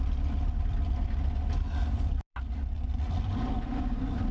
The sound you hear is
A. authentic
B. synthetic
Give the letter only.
B